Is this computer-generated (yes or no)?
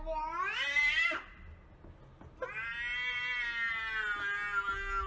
no